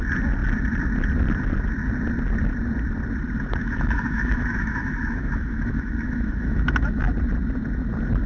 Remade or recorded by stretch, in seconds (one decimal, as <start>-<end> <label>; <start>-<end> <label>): 0.0-3.6 recorded; 3.6-7.1 remade; 7.1-8.3 recorded